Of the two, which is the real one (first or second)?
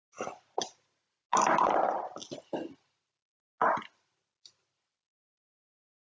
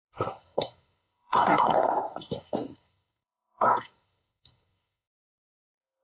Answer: first